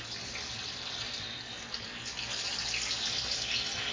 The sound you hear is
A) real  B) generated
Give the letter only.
A